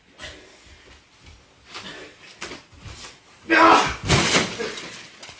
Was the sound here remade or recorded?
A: recorded